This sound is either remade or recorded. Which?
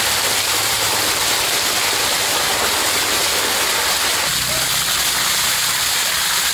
recorded